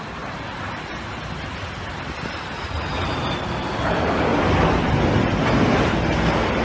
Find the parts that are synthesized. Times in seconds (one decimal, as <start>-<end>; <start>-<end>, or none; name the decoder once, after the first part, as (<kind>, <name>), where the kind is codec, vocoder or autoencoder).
0.0-4.3 (vocoder, BigVGAN v2); 4.9-6.6